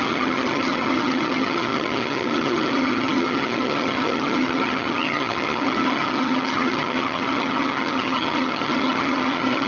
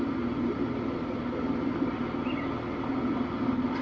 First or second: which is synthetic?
first